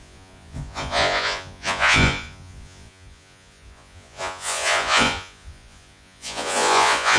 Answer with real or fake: fake